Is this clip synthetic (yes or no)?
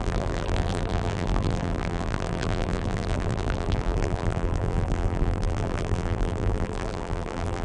yes